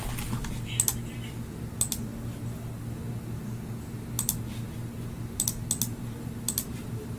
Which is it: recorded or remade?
recorded